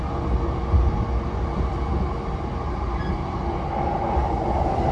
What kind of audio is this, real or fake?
real